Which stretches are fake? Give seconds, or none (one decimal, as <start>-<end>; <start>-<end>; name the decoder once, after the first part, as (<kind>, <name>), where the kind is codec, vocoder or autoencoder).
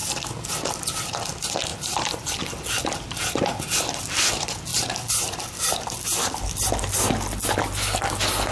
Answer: 1.7-2.3 (vocoder, BigVGAN v2)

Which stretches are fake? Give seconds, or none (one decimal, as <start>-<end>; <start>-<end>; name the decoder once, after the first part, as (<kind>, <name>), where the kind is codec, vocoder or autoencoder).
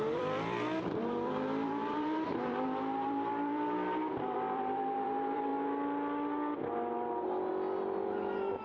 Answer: 0.0-5.5 (vocoder, BigVGAN v2); 7.5-8.6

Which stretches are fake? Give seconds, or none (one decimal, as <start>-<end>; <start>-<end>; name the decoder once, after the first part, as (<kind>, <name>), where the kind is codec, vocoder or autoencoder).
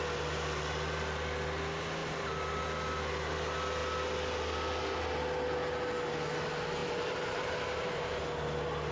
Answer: 2.0-2.6 (vocoder, BigVGAN v2); 6.8-8.2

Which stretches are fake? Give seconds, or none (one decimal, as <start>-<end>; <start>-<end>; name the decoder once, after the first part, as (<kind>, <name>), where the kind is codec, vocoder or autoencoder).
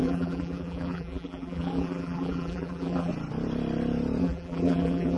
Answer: 0.0-3.1 (vocoder, BigVGAN v2); 4.2-5.2